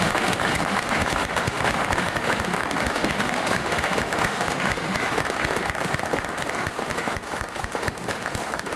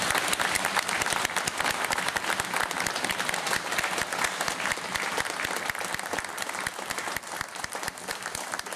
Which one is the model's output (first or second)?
first